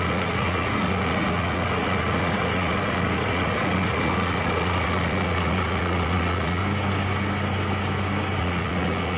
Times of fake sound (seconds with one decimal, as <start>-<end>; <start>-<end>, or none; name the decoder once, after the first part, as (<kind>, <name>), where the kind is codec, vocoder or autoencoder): 0.0-6.6 (vocoder, Vocos); 8.4-9.2

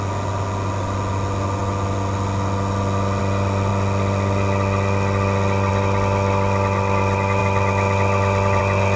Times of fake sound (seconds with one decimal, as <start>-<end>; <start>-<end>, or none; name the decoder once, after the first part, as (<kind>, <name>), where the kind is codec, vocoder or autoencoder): none